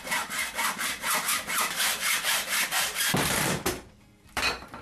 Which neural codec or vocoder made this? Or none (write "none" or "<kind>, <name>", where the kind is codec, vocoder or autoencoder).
vocoder, BigVGAN v2